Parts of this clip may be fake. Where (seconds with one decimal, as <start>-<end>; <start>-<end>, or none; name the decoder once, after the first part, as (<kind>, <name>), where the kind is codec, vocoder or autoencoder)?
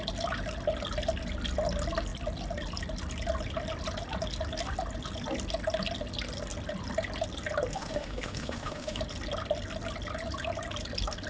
7.7-9.0 (autoencoder, DAC-VAE)